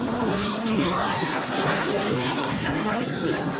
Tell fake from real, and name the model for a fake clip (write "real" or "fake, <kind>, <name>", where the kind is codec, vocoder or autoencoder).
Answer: fake, codec, SNAC